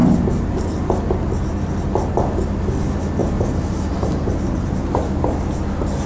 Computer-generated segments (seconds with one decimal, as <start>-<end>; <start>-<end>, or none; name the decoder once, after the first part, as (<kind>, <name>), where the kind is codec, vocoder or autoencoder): 3.2-5.0 (vocoder, BigVGAN v2)